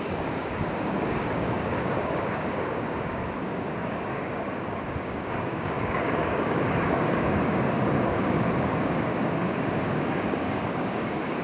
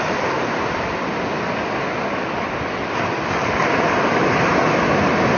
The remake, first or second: first